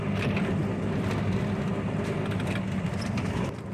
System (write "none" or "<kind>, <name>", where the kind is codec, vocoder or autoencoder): none